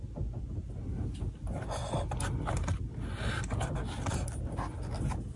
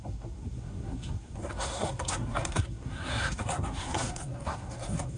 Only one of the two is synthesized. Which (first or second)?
second